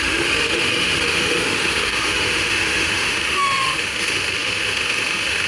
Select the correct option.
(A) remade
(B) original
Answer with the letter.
A